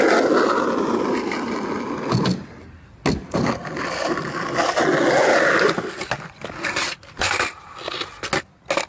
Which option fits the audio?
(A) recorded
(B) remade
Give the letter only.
A